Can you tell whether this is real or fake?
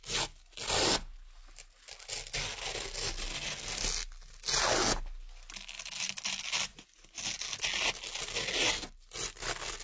real